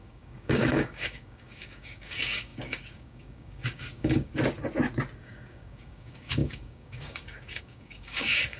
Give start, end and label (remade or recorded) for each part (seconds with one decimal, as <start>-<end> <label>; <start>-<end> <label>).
0.0-4.3 remade; 4.3-5.2 recorded; 5.2-8.6 remade

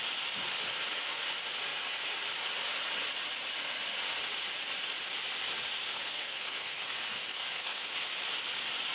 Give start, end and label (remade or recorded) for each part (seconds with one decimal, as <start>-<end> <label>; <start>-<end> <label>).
0.0-5.9 recorded; 5.9-8.2 remade; 8.2-8.9 recorded

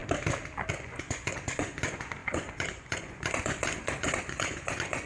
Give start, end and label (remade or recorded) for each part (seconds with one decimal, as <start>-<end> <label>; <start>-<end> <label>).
0.0-0.7 recorded; 0.7-5.1 remade

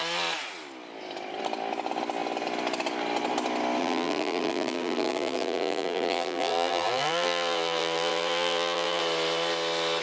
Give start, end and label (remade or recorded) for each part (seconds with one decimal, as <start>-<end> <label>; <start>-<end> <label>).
0.0-3.8 recorded; 3.8-9.0 remade; 9.0-10.0 recorded

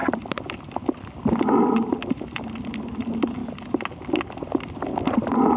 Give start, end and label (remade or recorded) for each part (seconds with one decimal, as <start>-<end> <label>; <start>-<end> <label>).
0.0-5.6 recorded